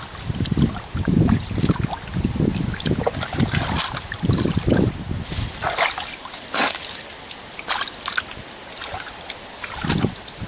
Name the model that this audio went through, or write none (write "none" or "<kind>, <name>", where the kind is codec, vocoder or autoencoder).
none